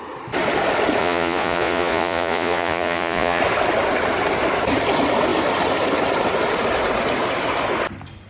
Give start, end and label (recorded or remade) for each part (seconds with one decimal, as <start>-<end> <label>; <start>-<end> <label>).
0.0-1.0 recorded; 1.0-3.4 remade; 3.4-8.3 recorded